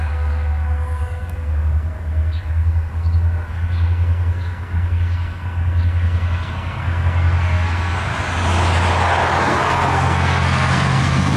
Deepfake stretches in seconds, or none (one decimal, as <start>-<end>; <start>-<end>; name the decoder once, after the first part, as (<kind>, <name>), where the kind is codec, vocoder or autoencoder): 0.0-8.1 (codec, SNAC); 9.4-11.4